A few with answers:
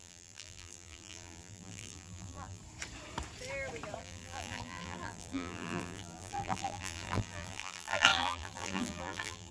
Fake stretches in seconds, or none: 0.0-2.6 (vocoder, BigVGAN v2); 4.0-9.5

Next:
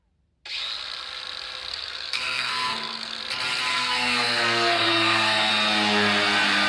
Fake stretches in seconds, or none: 1.7-3.2 (codec, SNAC); 3.7-5.5